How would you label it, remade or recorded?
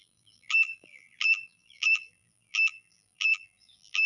remade